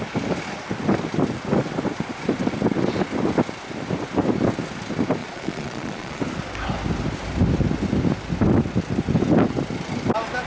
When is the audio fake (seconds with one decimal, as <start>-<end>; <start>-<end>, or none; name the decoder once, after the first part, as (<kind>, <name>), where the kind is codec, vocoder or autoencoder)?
5.2-6.2 (vocoder, Vocos)